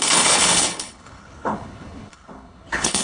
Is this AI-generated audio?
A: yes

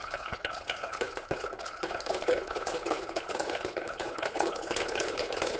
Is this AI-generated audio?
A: yes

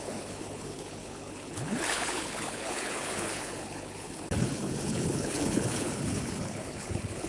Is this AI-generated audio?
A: yes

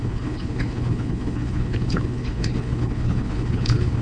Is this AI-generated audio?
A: yes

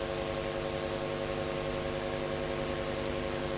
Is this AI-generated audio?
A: no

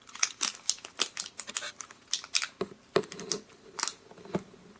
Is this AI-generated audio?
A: no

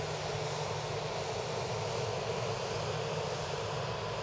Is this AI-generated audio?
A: no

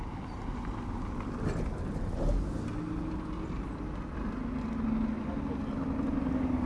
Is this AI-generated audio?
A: no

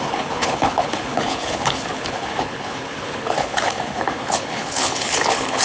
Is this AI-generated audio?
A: yes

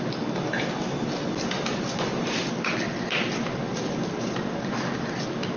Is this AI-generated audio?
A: no